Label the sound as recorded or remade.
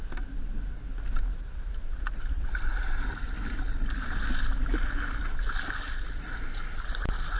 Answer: recorded